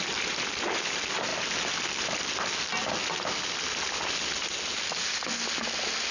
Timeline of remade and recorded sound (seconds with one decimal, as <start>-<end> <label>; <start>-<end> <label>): 0.0-6.1 recorded